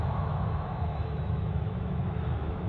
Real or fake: fake